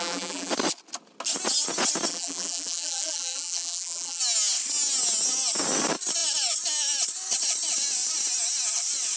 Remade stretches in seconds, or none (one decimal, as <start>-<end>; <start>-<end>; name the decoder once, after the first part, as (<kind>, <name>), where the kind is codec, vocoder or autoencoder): 0.0-0.5 (vocoder, BigVGAN v2); 2.1-4.2